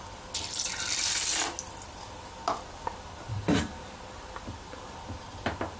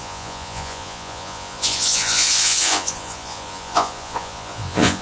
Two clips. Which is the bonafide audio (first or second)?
first